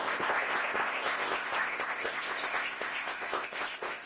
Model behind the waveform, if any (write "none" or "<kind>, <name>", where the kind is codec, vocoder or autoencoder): codec, ZipCodec